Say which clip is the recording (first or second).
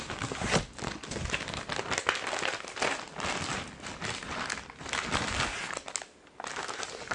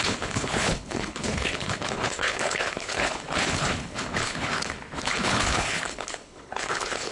first